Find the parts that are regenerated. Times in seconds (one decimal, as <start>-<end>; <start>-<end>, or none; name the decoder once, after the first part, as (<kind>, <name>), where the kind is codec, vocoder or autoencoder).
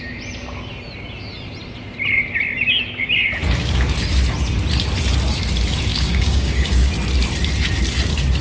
5.9-6.9 (codec, DAC)